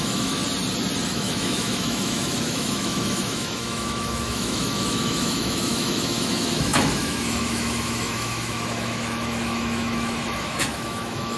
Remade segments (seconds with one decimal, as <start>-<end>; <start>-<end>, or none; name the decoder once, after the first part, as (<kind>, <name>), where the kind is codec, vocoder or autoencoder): 0.0-0.4 (autoencoder, DAC-VAE); 1.1-11.4